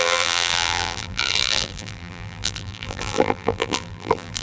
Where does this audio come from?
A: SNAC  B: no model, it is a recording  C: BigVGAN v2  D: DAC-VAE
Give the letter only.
C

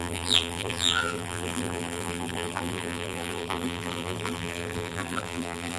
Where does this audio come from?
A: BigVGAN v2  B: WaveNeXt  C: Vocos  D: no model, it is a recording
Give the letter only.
A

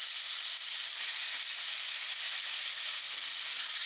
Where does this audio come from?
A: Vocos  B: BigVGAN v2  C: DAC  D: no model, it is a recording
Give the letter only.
D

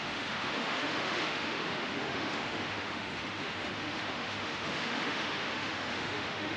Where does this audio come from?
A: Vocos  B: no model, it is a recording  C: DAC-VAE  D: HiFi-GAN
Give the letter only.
C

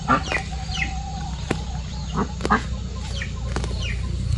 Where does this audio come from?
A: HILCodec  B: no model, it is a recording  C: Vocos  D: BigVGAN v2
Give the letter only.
B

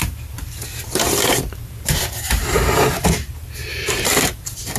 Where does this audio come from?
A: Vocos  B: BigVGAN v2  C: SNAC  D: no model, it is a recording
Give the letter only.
B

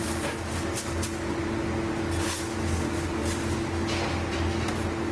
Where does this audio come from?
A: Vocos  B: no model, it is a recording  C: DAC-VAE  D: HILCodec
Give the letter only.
B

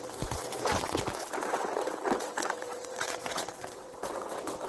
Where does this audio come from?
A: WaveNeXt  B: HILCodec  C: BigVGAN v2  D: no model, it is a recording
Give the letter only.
A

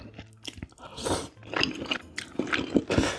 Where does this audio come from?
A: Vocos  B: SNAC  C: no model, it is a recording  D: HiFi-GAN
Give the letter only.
C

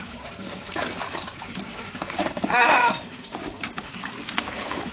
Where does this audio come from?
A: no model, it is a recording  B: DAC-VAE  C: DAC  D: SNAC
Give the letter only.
C